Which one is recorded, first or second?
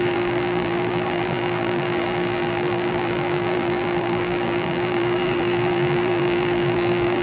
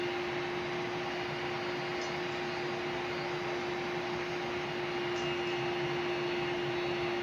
second